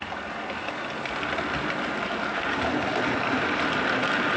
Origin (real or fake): real